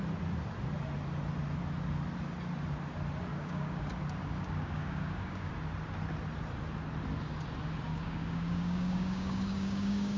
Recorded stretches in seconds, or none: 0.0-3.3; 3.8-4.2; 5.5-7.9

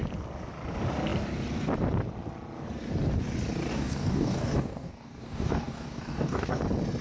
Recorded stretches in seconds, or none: 0.0-3.7; 6.6-7.0

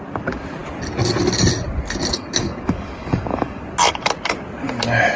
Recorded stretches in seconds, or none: 0.0-2.1; 3.6-5.2

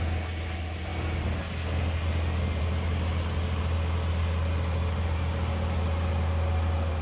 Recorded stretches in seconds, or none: 0.0-7.0